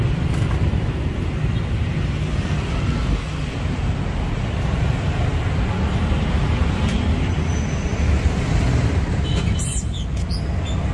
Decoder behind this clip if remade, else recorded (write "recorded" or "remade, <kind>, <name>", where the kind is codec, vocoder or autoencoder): remade, vocoder, BigVGAN v2